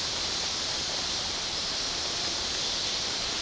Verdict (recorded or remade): remade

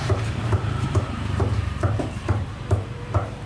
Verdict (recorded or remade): remade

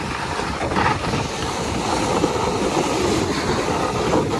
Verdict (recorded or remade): remade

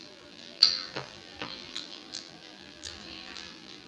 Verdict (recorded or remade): remade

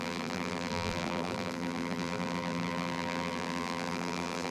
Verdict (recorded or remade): remade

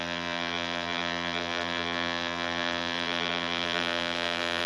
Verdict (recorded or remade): remade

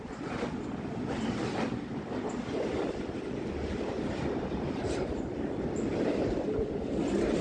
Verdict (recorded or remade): remade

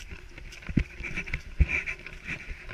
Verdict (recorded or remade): remade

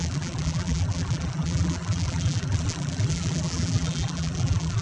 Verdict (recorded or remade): remade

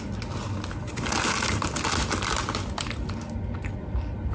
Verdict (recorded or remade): recorded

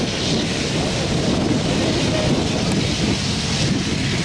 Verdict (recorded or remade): recorded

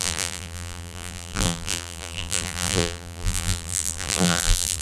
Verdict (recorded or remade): remade